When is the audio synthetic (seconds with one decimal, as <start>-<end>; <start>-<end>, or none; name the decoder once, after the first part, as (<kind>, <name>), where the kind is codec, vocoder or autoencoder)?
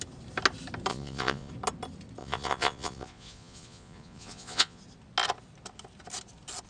0.9-1.5 (vocoder, Vocos); 2.2-4.8